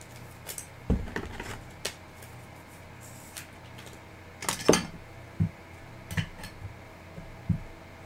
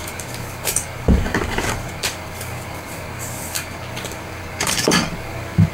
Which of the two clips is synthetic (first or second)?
second